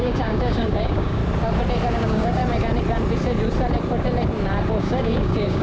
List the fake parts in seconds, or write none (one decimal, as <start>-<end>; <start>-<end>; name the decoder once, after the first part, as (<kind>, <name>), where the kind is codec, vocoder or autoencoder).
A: 0.0-1.2 (codec, DAC); 1.9-2.4; 4.8-5.6